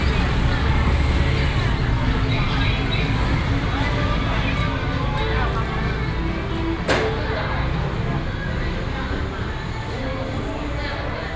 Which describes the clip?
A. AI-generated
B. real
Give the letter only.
B